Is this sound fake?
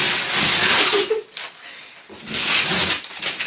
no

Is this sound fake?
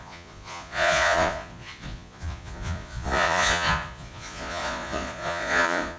yes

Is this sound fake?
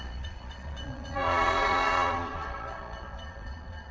yes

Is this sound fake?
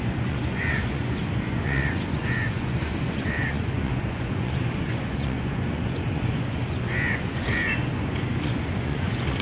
yes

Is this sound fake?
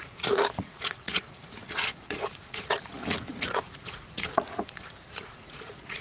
yes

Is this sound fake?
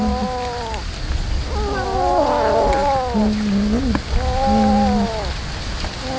no